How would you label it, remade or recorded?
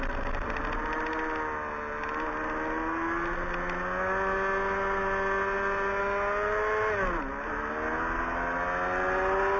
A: recorded